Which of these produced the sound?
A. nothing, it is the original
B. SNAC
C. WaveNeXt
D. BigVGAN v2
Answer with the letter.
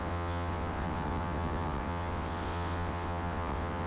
C